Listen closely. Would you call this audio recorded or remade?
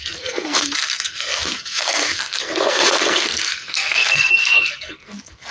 remade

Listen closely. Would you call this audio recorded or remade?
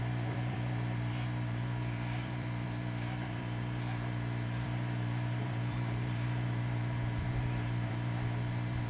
remade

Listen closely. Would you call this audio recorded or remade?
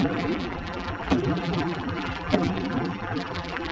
remade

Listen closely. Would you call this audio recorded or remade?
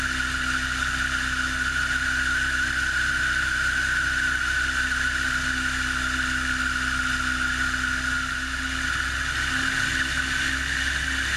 recorded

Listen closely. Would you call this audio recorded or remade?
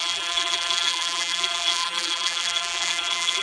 remade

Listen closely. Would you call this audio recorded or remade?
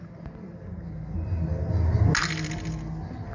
recorded